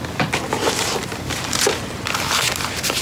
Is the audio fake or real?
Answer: real